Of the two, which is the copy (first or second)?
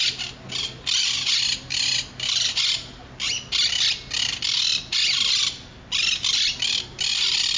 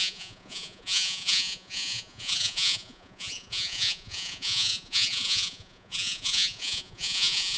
second